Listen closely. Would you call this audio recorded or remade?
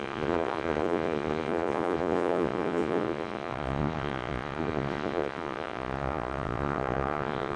remade